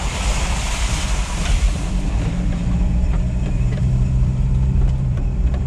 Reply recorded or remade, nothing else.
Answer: remade